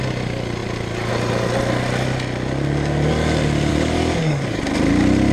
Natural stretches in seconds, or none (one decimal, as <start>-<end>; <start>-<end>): 0.0-3.7; 4.6-5.3